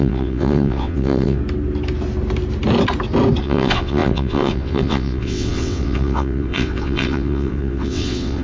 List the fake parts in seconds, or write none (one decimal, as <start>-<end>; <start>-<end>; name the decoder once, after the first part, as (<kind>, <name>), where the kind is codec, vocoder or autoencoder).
0.0-1.4 (vocoder, WaveNeXt); 3.4-8.4